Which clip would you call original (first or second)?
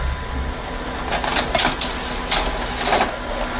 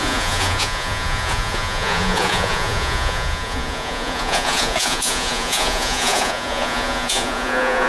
first